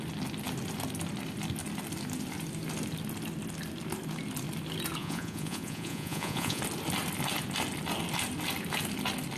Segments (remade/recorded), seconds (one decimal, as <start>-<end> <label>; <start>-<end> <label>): 0.0-5.0 recorded; 5.0-6.6 remade; 6.6-9.4 recorded